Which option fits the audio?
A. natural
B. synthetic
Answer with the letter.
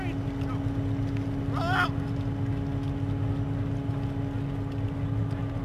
A